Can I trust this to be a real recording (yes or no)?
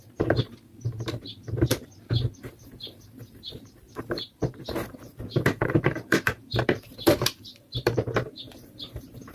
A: no